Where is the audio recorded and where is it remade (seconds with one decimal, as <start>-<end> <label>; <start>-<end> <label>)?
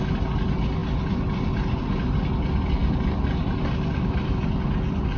0.0-5.2 recorded